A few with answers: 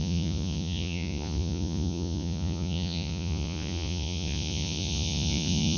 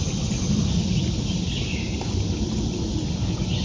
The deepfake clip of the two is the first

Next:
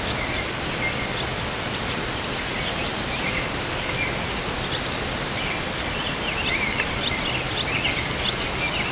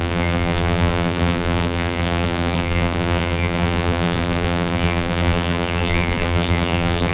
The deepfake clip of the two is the second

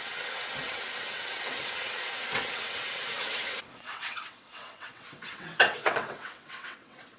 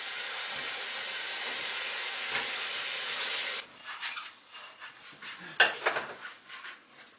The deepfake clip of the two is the first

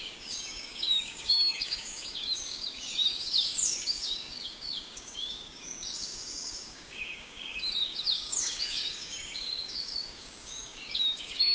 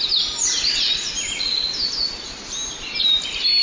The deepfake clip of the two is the first